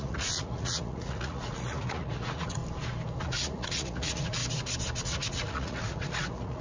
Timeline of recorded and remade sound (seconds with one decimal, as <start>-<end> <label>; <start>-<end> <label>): 0.0-2.6 remade; 2.6-3.2 recorded; 3.2-4.4 remade; 4.4-5.0 recorded; 5.0-6.6 remade